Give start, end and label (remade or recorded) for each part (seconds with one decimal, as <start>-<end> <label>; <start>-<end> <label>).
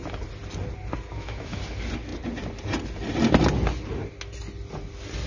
0.0-1.1 recorded; 1.1-1.6 remade; 1.6-5.3 recorded